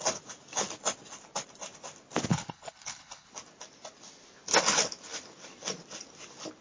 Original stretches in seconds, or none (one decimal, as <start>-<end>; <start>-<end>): 0.0-2.3; 3.3-6.6